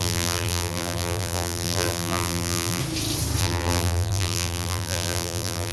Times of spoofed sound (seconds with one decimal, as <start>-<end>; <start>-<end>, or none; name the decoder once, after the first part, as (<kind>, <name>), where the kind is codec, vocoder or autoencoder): 0.0-2.8 (vocoder, BigVGAN v2); 3.4-5.7